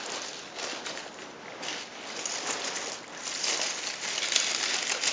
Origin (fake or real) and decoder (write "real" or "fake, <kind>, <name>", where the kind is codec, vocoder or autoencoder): real